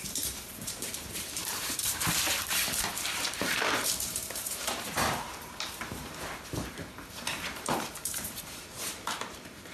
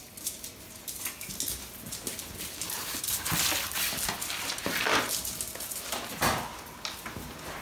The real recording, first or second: second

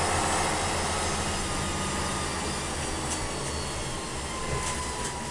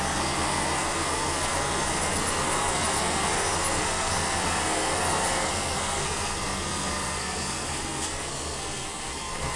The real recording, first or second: first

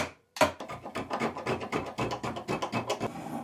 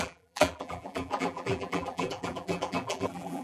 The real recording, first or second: first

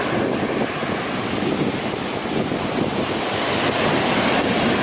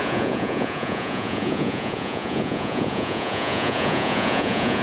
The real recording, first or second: first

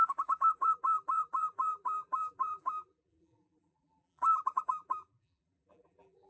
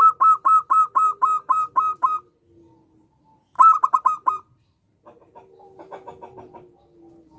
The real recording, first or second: second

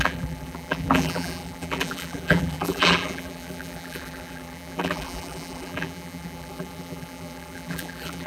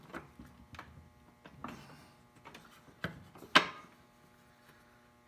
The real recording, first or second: second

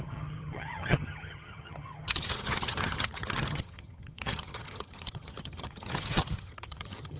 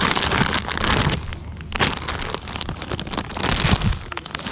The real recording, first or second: second